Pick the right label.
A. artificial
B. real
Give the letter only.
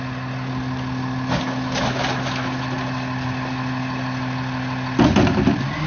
B